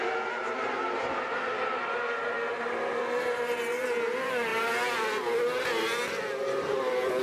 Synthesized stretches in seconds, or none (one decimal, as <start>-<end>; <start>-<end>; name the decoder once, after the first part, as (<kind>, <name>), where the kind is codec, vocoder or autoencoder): 0.4-3.0 (vocoder, BigVGAN v2)